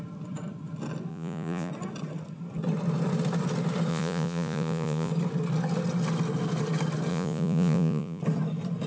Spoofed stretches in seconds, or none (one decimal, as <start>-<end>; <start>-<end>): 1.1-1.7; 3.9-5.1; 7.1-8.2